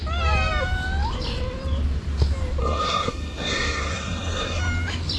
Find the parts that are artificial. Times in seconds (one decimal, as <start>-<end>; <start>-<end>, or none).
2.6-4.6